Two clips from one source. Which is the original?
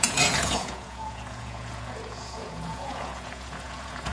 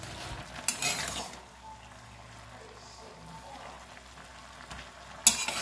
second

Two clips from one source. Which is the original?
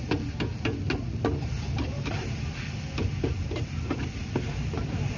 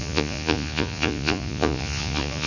first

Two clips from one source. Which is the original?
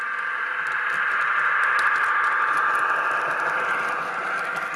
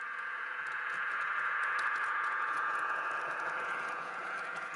first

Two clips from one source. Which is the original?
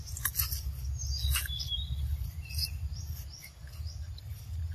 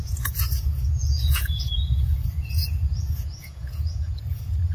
first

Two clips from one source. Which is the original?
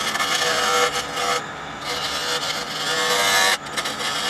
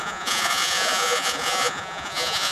first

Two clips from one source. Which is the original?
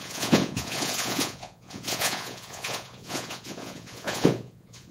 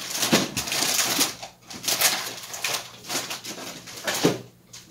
second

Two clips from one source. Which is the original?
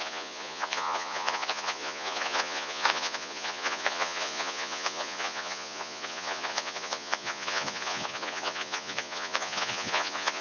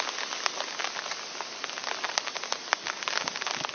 second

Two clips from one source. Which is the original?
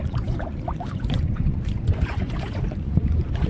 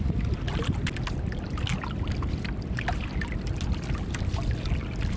second